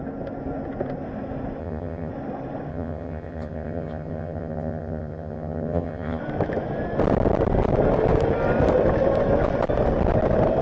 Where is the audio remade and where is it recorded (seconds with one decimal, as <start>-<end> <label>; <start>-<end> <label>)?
0.0-1.6 recorded; 1.6-2.1 remade; 2.1-2.7 recorded; 2.7-6.2 remade; 6.2-10.6 recorded